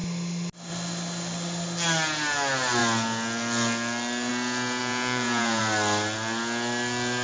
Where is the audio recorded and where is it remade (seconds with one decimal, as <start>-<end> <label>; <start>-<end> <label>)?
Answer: 0.0-4.8 recorded; 4.8-5.6 remade; 5.6-7.2 recorded